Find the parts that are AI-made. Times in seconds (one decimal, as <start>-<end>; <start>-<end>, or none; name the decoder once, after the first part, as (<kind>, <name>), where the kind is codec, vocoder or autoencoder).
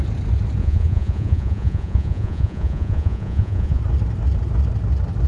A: 0.6-3.8 (vocoder, Vocos)